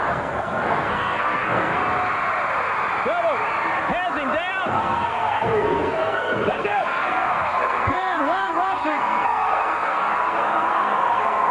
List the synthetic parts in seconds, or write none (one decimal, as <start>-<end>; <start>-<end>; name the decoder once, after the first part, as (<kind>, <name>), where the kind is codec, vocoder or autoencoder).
0.0-1.8 (codec, SNAC); 4.7-11.5